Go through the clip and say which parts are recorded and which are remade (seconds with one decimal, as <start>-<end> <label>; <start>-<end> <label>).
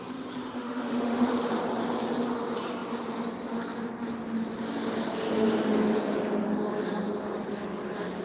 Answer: 0.0-0.4 recorded; 0.4-1.2 remade; 1.2-8.2 recorded